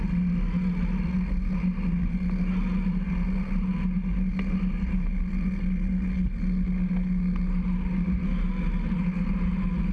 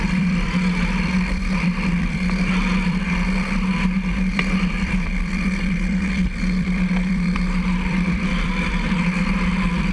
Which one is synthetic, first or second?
second